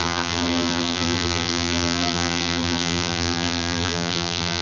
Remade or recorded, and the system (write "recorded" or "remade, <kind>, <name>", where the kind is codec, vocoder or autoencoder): remade, vocoder, BigVGAN v2